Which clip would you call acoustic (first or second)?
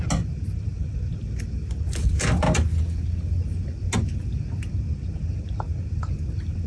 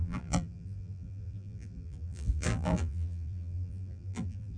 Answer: first